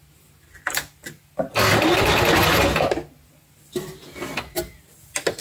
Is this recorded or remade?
recorded